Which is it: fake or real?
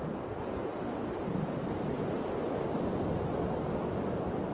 real